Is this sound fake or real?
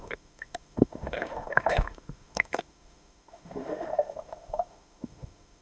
fake